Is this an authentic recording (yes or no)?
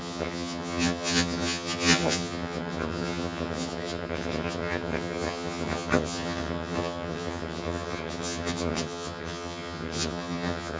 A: no